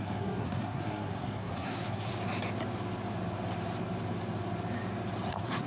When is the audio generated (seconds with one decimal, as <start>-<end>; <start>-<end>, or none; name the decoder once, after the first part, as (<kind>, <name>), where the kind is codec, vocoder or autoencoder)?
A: 0.0-2.1 (codec, SNAC); 5.3-5.7